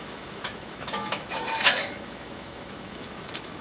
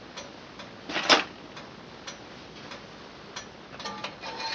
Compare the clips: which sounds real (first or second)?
second